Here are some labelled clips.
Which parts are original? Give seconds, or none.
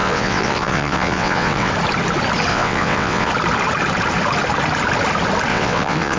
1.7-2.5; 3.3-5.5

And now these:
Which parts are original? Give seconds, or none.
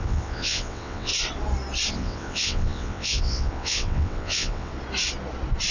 1.1-1.9; 4.7-5.7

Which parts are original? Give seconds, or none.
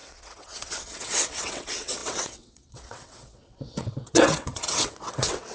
none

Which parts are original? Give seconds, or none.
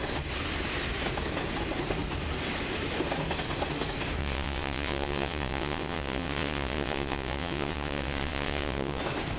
0.0-4.2; 9.0-9.4